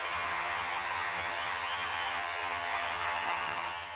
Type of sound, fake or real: fake